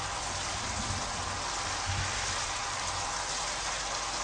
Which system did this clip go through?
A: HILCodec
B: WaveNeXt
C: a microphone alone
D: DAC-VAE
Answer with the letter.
C